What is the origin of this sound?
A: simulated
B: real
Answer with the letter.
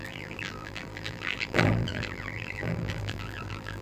A